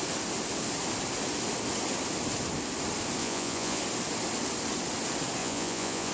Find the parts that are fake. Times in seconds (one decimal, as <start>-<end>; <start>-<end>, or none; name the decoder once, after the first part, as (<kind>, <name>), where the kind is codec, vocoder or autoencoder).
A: 3.2-3.8 (vocoder, Vocos); 5.4-6.1